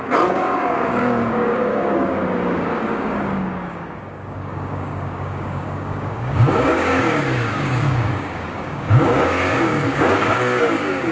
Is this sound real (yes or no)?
no